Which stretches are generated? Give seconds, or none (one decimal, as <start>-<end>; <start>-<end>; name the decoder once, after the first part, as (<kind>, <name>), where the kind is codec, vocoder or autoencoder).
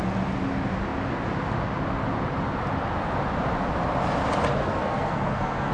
4.6-5.7 (codec, SNAC)